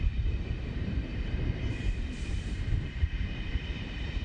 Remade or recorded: remade